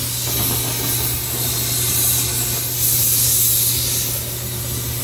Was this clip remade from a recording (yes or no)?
no